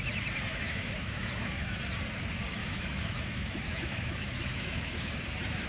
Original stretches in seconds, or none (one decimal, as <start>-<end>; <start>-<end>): 0.0-0.5; 1.8-2.6; 5.2-5.7